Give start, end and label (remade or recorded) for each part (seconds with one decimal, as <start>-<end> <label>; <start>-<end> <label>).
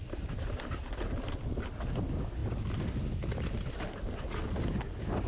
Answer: 0.0-5.3 recorded